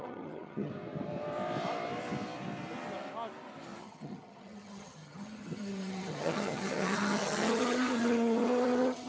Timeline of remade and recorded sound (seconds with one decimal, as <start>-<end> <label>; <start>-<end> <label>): 0.0-0.7 remade; 0.7-3.8 recorded; 3.8-9.1 remade